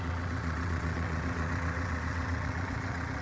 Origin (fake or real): fake